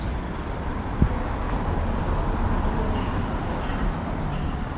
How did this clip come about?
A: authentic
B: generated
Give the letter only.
B